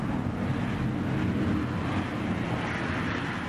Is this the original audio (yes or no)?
yes